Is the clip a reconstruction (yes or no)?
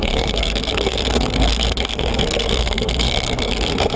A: yes